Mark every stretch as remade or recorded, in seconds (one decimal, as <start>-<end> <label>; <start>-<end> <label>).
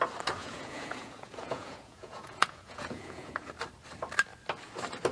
0.0-0.4 recorded; 0.4-3.5 remade; 3.5-5.1 recorded